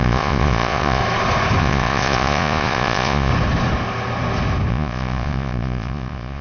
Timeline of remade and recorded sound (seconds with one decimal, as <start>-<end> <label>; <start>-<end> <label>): 0.0-1.0 remade; 1.0-1.6 recorded; 1.6-3.3 remade; 3.3-4.7 recorded; 4.7-6.4 remade